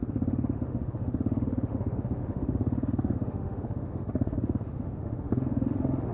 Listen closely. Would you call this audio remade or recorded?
remade